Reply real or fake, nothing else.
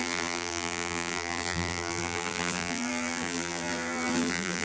fake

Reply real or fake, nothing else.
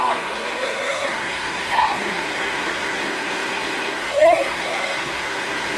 fake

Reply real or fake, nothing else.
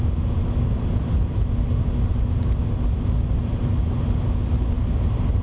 real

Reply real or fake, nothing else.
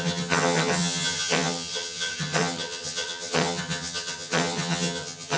fake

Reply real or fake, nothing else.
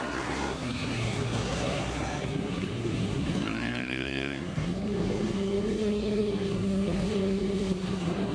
fake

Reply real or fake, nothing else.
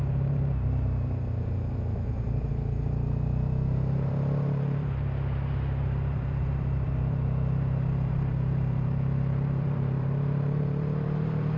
fake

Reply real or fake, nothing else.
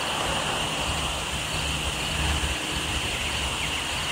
real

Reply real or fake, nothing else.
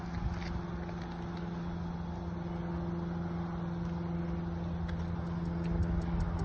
real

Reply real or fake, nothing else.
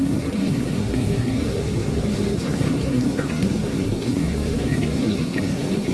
fake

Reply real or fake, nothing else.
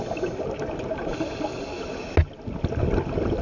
real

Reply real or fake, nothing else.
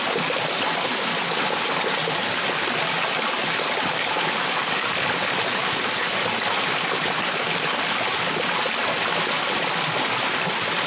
real